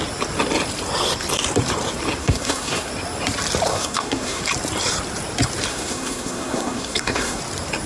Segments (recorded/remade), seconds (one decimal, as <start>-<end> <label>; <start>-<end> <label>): 0.0-2.2 recorded; 2.2-2.9 remade; 2.9-3.7 recorded; 3.7-4.4 remade; 4.4-5.7 recorded; 5.7-7.4 remade; 7.4-7.9 recorded